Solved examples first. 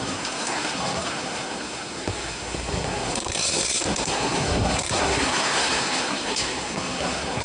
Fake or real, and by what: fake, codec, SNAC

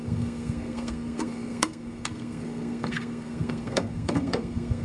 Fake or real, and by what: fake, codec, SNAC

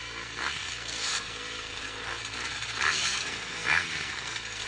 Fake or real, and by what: fake, codec, SNAC